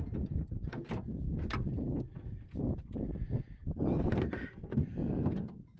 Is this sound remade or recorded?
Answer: recorded